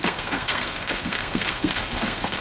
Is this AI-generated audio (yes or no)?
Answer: yes